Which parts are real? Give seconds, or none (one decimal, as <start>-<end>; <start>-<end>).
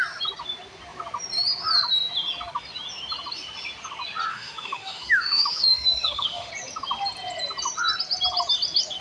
0.0-4.3; 6.5-9.0